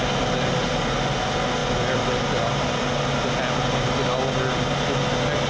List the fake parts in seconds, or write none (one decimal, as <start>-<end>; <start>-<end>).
1.6-2.4